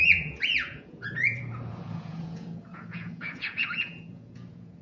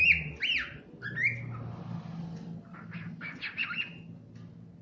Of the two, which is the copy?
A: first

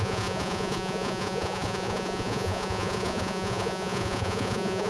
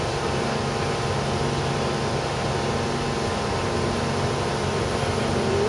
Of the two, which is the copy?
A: first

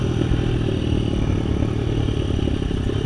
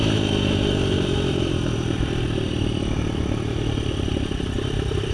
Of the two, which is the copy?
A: second